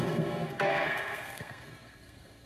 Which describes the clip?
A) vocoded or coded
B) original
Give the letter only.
A